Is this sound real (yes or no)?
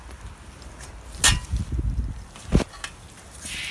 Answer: yes